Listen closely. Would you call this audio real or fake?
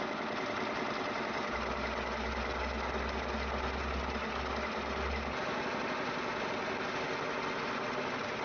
real